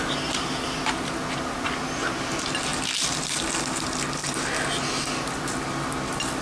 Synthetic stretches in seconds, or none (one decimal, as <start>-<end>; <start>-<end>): none